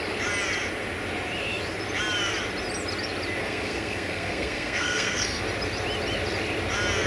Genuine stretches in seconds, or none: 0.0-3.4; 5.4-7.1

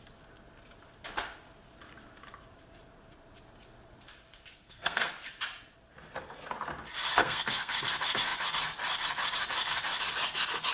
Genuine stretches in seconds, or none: 0.0-4.5; 5.1-7.2; 7.9-10.7

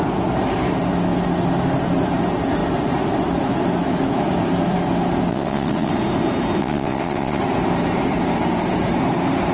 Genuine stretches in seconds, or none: 0.0-5.3; 5.9-6.6; 7.4-9.5